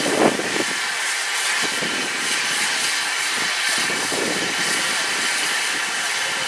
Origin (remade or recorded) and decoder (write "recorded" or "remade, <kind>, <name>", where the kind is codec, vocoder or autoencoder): recorded